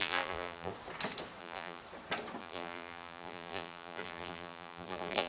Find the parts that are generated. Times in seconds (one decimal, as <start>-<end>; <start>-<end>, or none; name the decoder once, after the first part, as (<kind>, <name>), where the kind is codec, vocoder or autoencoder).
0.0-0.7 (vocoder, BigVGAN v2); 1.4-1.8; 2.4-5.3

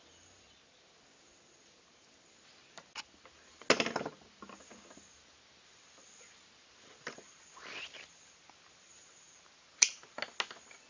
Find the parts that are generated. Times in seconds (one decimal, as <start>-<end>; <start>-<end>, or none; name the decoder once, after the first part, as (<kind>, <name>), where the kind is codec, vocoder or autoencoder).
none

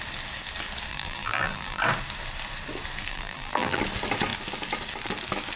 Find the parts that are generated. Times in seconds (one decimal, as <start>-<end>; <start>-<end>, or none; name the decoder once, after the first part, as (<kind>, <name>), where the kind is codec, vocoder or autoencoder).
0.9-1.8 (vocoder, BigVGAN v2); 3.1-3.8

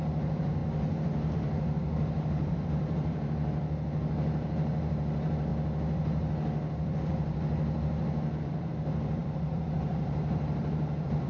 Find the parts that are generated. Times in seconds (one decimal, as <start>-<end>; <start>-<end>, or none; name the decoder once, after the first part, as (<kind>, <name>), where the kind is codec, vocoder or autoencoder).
0.0-0.6 (vocoder, BigVGAN v2); 1.3-5.5; 8.4-11.3

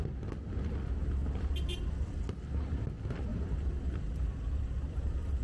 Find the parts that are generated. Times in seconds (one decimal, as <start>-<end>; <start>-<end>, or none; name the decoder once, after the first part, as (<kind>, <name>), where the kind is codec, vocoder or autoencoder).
1.2-1.8 (vocoder, BigVGAN v2); 3.3-5.0

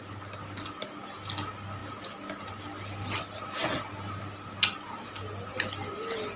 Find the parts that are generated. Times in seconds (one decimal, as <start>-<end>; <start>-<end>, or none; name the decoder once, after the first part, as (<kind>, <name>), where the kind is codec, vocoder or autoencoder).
none